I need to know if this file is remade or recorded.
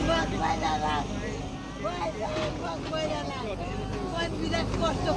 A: recorded